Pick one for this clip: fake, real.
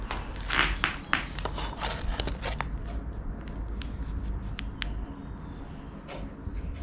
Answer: real